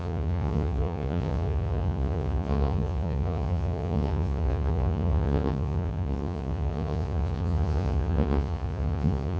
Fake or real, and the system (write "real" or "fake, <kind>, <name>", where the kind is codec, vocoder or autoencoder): fake, vocoder, Vocos